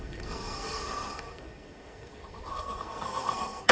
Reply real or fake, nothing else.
fake